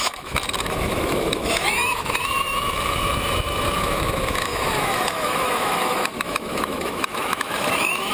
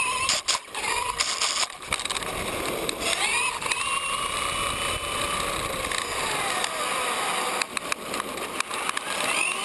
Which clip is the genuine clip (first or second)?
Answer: second